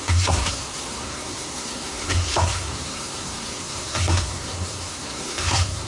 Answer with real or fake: fake